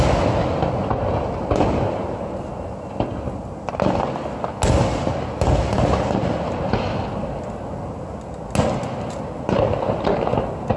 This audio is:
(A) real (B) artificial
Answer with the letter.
A